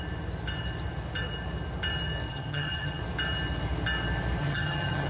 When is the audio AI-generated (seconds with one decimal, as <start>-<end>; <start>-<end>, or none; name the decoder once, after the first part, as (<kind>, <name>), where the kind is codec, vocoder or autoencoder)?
2.3-3.0 (vocoder, HiFi-GAN); 4.4-5.1